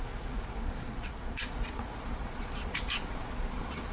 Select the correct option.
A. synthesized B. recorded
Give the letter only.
A